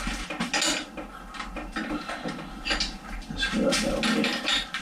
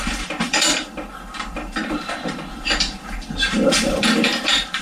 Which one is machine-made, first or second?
second